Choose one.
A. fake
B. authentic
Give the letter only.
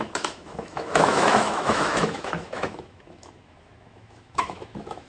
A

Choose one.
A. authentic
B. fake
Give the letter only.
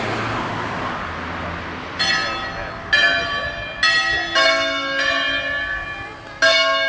A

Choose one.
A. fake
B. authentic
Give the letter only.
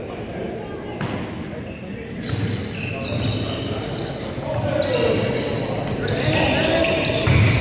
B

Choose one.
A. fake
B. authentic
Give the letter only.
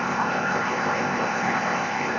A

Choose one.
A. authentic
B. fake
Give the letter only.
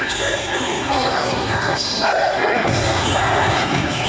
B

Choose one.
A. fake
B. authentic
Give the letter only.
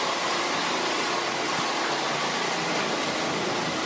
B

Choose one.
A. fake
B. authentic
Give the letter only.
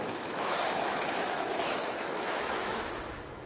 A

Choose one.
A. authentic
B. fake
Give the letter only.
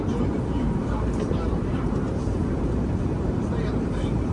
B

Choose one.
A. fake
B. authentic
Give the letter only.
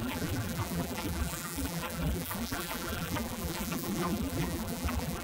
A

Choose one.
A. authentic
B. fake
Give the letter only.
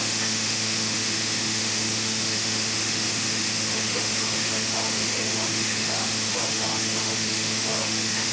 B